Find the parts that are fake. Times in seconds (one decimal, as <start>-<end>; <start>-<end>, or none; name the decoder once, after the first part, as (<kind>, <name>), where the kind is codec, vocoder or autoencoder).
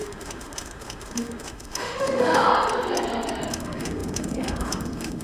0.0-2.5 (autoencoder, DAC-VAE); 3.5-5.2